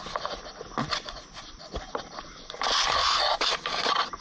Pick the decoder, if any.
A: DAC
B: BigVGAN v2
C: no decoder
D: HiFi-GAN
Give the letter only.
C